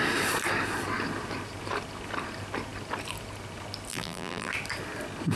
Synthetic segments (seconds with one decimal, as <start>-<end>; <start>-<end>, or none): 3.9-4.5